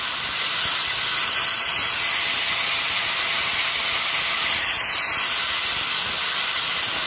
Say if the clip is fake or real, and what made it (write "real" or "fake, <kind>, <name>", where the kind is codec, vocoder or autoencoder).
real